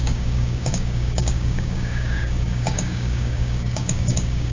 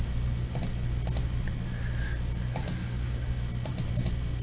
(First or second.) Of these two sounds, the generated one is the first